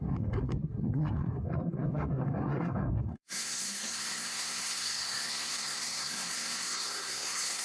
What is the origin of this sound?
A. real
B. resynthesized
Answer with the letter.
B